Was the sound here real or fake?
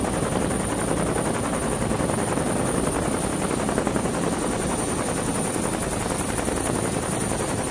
real